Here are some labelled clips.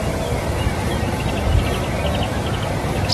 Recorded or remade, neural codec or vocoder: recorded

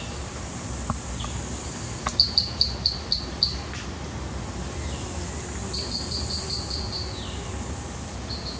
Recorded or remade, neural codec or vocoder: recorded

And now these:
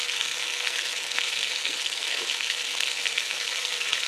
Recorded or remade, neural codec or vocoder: remade, codec, SNAC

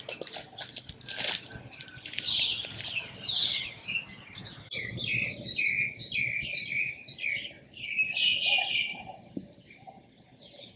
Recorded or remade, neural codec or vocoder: recorded